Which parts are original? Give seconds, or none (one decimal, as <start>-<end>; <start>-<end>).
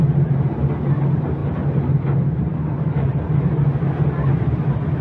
0.0-2.5; 3.1-5.0